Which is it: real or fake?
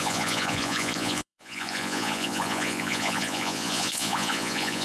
fake